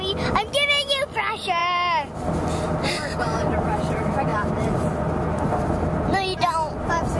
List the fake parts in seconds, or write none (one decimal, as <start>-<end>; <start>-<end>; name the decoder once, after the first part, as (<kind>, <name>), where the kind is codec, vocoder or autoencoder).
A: 4.3-7.2 (vocoder, BigVGAN v2)